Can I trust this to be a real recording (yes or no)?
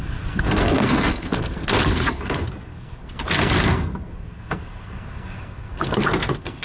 no